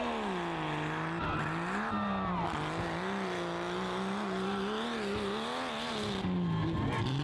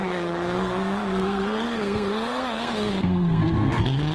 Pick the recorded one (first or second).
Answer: first